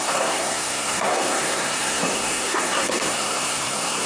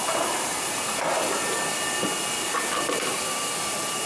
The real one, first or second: second